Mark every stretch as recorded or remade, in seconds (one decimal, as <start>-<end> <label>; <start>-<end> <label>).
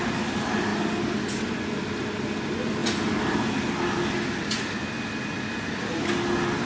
0.0-6.7 recorded